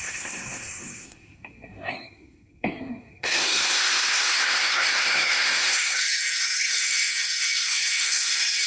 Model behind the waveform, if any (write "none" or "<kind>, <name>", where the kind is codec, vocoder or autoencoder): codec, SNAC